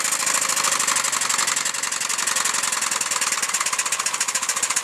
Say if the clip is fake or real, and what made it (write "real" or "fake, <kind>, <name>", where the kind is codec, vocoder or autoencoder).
real